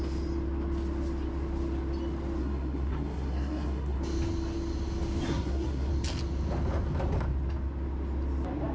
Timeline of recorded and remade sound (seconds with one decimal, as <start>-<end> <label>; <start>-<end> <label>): 0.0-2.4 recorded; 2.4-4.0 remade; 4.0-5.3 recorded; 5.3-5.9 remade; 5.9-8.7 recorded